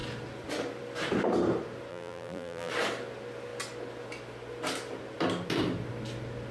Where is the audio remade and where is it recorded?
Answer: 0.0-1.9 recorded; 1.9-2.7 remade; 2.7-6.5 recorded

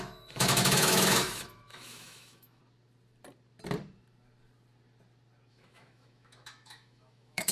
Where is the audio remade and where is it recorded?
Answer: 0.0-2.6 remade; 2.6-5.5 recorded; 5.5-7.5 remade

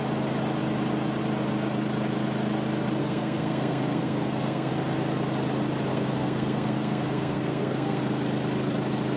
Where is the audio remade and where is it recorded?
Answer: 0.0-3.0 recorded; 3.0-4.7 remade; 4.7-5.9 recorded; 5.9-8.0 remade; 8.0-9.2 recorded

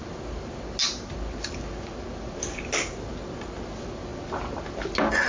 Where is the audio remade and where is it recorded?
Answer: 0.0-5.3 recorded

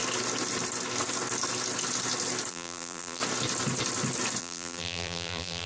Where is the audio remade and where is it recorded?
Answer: 0.0-2.5 recorded; 2.5-3.2 remade; 3.2-4.4 recorded; 4.4-5.7 remade